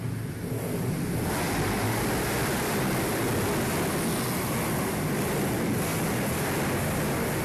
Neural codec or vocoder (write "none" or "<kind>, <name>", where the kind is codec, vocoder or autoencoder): none